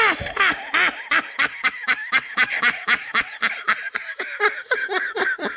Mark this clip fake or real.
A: real